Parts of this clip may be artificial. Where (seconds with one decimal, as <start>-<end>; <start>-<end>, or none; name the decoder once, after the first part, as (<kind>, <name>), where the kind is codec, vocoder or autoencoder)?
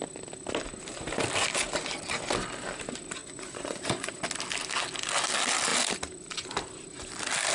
3.2-4.1 (vocoder, Vocos)